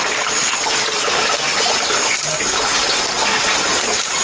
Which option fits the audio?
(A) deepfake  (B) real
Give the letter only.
B